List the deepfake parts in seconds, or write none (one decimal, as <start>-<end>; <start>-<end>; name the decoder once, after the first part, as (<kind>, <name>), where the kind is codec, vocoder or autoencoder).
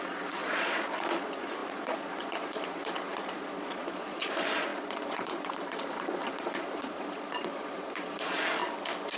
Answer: 0.0-8.6 (vocoder, Vocos)